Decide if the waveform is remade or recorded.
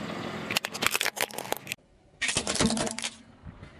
recorded